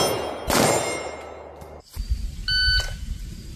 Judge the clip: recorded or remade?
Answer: recorded